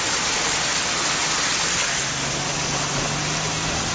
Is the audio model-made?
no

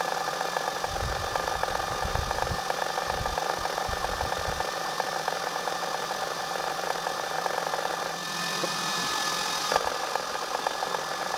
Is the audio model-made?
no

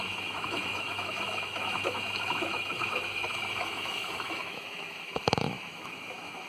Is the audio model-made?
yes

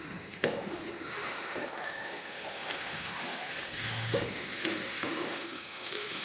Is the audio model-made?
yes